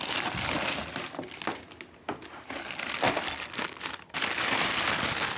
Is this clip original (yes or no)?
yes